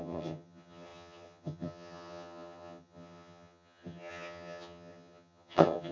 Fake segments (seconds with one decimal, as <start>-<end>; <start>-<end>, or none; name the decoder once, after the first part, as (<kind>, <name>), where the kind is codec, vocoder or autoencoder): 0.0-5.9 (vocoder, HiFi-GAN)